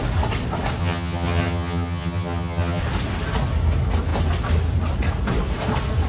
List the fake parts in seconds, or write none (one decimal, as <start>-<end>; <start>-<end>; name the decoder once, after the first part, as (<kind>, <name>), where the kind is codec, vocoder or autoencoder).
0.8-2.8 (vocoder, HiFi-GAN)